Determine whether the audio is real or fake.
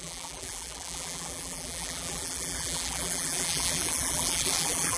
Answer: fake